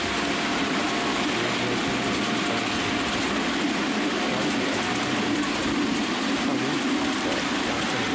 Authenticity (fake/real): real